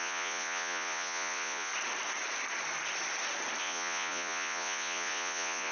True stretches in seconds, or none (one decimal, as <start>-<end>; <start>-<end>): 1.7-3.6